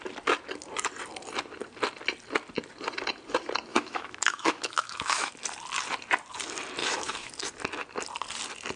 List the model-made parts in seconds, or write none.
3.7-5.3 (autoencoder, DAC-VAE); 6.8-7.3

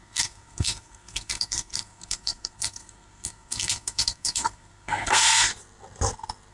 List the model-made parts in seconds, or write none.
0.0-5.5 (codec, SNAC)